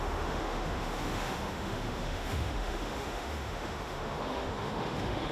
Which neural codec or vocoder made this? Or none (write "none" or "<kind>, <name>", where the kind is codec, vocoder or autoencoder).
autoencoder, DAC-VAE